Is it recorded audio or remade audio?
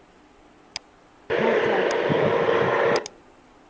recorded